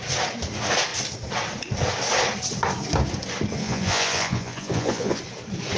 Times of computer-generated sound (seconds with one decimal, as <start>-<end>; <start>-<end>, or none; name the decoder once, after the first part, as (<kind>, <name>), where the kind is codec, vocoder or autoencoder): 3.6-5.2 (vocoder, Vocos)